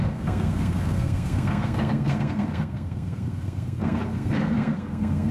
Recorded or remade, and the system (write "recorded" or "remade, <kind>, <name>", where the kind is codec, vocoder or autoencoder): remade, codec, SNAC